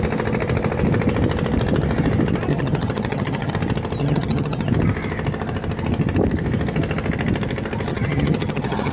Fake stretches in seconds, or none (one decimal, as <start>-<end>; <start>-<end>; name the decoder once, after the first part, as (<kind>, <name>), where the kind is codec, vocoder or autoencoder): 2.5-3.5 (vocoder, HiFi-GAN); 4.0-4.7; 7.9-8.9